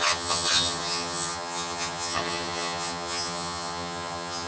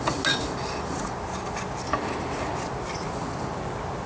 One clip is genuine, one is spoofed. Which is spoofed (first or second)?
first